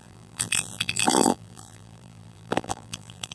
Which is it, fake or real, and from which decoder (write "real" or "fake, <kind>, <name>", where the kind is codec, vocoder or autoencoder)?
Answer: fake, vocoder, BigVGAN v2